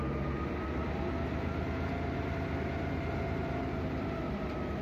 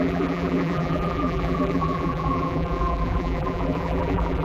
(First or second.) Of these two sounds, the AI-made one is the second